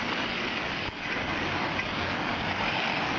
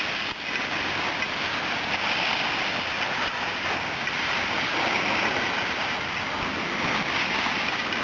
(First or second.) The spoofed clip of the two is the first